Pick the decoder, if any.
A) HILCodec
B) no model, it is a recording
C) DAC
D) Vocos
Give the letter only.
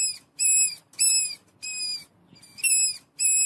B